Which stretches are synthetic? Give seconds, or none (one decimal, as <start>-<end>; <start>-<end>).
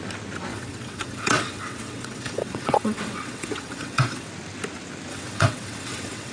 0.5-4.3; 5.1-6.3